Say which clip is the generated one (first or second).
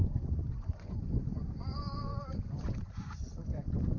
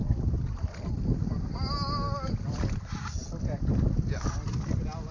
first